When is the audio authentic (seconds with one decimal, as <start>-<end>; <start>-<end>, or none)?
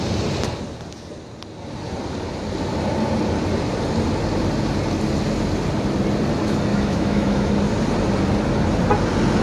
0.0-6.7; 7.5-9.4